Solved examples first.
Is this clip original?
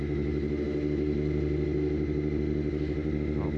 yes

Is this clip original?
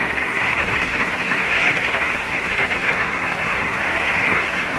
no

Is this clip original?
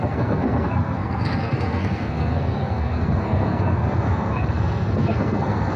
no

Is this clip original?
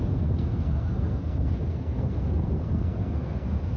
no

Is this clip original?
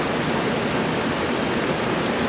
yes